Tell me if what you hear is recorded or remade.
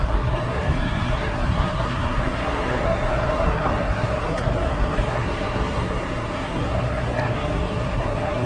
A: remade